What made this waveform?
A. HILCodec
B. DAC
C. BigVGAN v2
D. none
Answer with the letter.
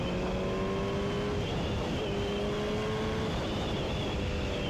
D